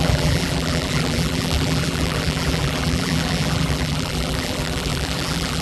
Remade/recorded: remade